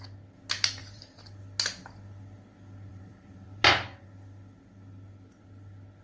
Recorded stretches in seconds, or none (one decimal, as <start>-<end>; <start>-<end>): 0.0-0.8; 1.4-2.9; 3.7-6.0